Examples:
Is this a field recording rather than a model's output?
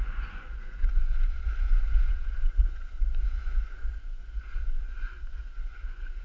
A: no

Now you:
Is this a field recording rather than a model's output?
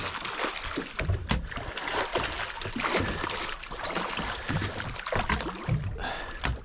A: yes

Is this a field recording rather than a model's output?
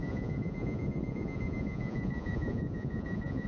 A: no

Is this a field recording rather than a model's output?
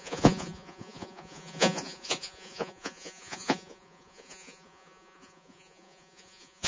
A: no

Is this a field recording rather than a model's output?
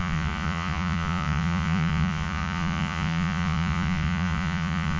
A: no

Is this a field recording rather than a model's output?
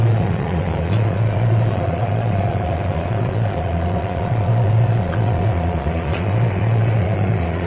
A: no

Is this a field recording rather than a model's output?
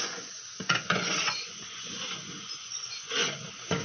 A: no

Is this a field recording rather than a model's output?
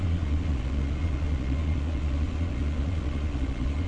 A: no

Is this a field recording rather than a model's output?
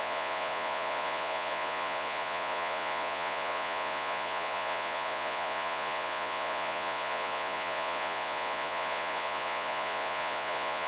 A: no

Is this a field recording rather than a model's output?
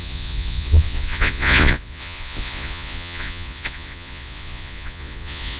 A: no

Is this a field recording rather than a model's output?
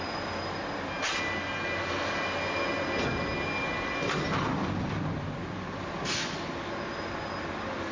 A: yes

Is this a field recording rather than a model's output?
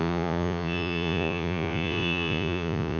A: no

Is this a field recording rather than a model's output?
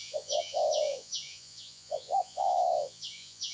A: no